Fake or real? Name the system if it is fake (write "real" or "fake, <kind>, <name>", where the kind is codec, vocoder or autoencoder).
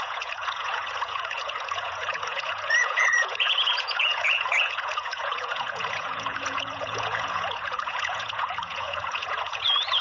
fake, vocoder, Vocos